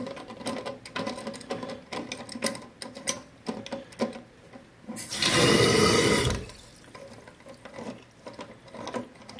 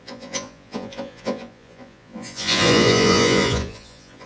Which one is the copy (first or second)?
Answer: second